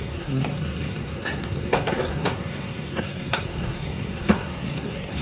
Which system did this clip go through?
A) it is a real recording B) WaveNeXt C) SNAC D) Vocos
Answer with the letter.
C